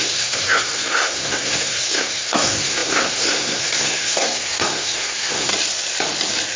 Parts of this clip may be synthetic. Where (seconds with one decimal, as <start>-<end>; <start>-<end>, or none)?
0.0-5.5